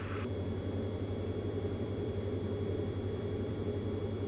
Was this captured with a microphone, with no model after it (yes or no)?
no